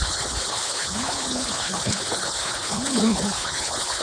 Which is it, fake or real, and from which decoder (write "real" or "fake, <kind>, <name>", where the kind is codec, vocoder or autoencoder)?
fake, codec, HILCodec